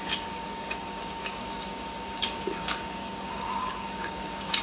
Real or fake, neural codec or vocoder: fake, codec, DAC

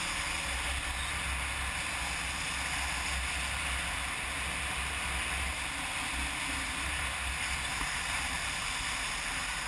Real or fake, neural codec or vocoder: real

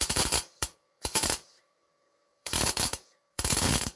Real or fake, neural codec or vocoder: fake, codec, DAC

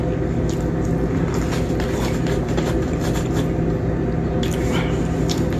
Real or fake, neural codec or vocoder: real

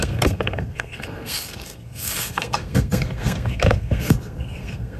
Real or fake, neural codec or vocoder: fake, codec, SNAC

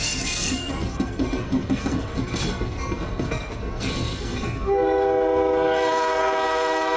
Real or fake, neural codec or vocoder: fake, codec, SNAC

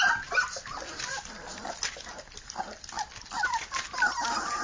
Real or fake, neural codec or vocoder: real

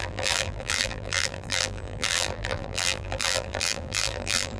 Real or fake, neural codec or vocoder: fake, vocoder, BigVGAN v2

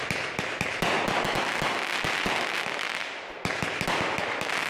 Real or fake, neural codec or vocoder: real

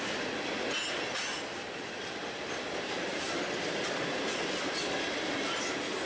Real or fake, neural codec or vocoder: real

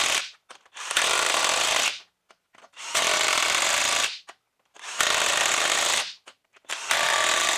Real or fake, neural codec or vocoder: real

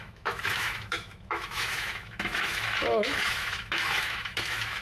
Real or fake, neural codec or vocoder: fake, autoencoder, DAC-VAE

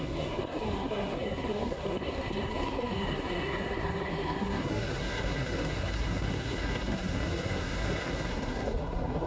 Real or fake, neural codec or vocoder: fake, codec, SNAC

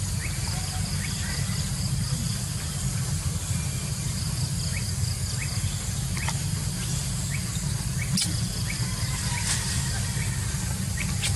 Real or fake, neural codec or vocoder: real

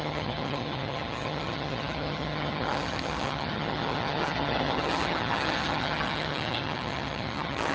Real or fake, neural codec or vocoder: fake, vocoder, HiFi-GAN